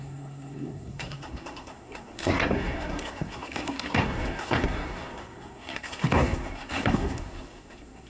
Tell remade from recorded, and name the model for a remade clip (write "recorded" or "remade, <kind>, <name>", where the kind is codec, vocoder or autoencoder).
remade, codec, SNAC